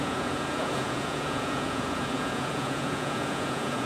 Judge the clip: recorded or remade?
remade